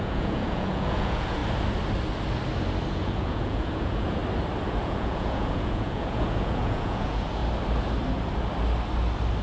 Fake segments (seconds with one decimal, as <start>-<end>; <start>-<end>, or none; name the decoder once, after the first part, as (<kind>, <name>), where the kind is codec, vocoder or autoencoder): 0.0-1.4 (vocoder, Vocos); 2.9-4.2; 4.8-7.4